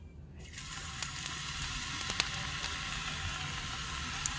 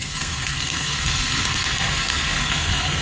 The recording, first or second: first